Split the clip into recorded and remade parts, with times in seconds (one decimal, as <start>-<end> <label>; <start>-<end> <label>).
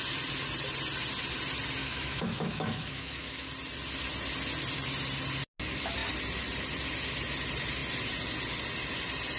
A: 0.0-1.8 recorded; 1.8-3.5 remade; 3.5-9.4 recorded